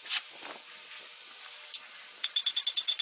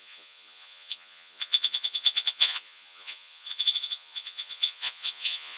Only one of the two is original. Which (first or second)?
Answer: first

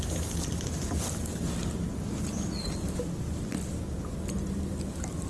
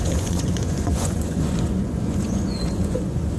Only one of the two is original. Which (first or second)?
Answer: first